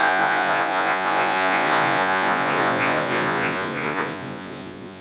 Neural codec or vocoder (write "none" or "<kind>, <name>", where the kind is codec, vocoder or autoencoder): vocoder, Vocos